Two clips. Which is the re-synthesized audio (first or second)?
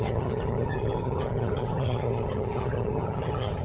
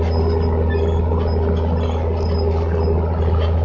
first